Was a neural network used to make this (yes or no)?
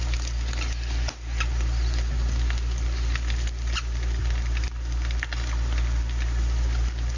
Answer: no